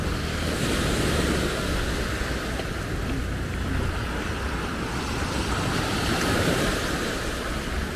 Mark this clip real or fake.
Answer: real